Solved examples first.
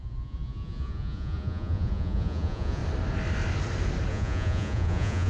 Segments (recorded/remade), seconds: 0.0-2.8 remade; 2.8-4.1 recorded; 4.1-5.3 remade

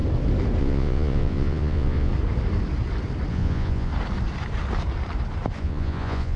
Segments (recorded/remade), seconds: 0.0-0.6 recorded; 0.6-2.1 remade; 2.1-3.3 recorded; 3.3-3.9 remade; 3.9-5.6 recorded; 5.6-6.4 remade

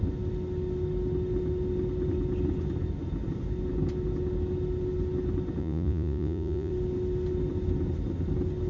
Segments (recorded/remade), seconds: 0.0-5.6 recorded; 5.6-6.7 remade; 6.7-8.7 recorded

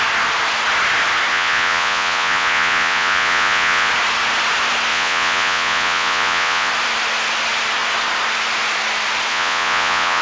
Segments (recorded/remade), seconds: 0.0-1.3 recorded; 1.3-3.9 remade; 3.9-4.9 recorded; 4.9-6.7 remade; 6.7-9.3 recorded; 9.3-10.2 remade

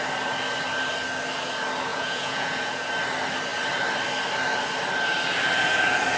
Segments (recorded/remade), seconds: 0.0-1.9 recorded; 1.9-2.9 remade; 2.9-6.2 recorded

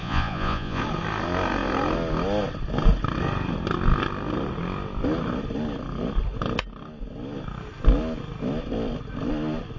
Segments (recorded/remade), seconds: 0.0-0.8 remade; 0.8-9.8 recorded

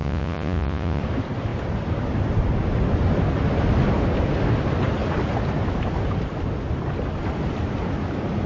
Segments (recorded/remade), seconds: 0.0-1.0 remade; 1.0-8.5 recorded

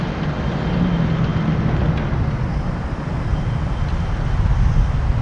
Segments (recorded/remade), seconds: 0.0-5.2 recorded